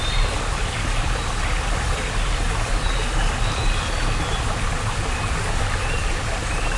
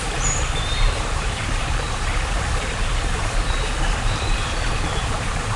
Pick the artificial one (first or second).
second